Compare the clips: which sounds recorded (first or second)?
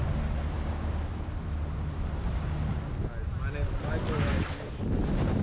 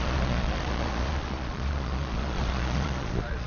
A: first